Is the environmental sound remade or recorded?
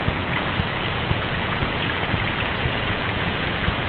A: remade